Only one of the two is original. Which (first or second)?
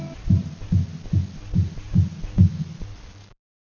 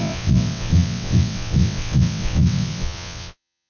first